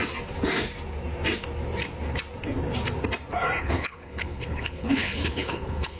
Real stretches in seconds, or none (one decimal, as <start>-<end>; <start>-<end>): 0.0-3.6